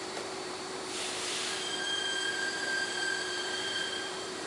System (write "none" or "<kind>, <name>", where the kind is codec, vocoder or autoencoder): vocoder, BigVGAN v2